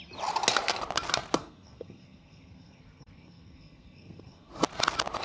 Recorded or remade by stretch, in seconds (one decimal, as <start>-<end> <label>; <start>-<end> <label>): 0.0-1.4 recorded; 1.4-4.5 remade; 4.5-5.2 recorded